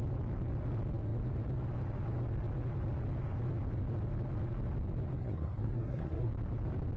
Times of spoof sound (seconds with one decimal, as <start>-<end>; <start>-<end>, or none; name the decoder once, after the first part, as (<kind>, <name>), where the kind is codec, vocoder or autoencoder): 5.2-6.3 (codec, SNAC)